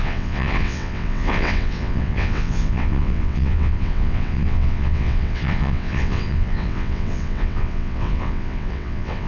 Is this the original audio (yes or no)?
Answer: no